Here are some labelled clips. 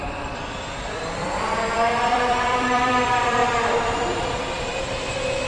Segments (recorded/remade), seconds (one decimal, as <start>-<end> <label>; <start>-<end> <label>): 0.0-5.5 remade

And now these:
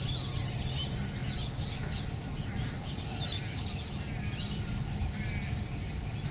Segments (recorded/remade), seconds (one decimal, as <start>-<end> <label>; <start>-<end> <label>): 0.0-6.3 recorded

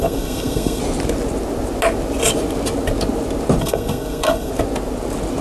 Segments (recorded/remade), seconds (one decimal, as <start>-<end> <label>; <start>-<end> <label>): 0.0-0.8 remade; 0.8-3.6 recorded; 3.6-4.5 remade; 4.5-5.4 recorded